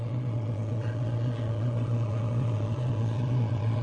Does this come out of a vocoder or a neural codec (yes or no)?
yes